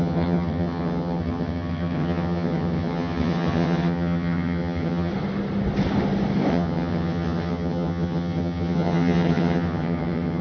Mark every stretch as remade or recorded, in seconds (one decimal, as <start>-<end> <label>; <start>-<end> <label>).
0.0-5.1 remade; 5.1-6.5 recorded; 6.5-10.4 remade